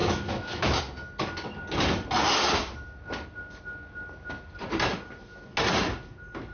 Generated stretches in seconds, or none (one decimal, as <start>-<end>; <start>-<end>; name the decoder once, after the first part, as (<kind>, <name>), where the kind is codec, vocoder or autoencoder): 0.0-0.8 (autoencoder, DAC-VAE)